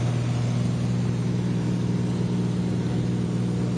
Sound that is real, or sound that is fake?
real